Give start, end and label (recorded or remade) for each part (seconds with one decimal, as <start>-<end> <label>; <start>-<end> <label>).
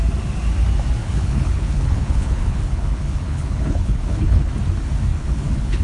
0.0-1.0 recorded; 1.0-4.5 remade; 4.5-5.1 recorded; 5.1-5.8 remade